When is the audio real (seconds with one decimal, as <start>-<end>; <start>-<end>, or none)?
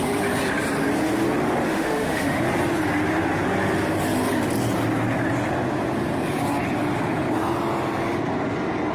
0.0-1.7; 2.4-8.9